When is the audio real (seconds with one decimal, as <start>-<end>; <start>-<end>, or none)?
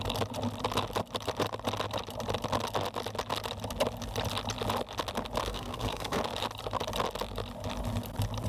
0.0-5.5; 6.2-8.5